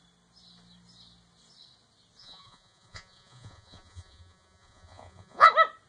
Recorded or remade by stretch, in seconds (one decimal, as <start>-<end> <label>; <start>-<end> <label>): 0.0-2.2 recorded; 2.2-5.5 remade; 5.5-5.9 recorded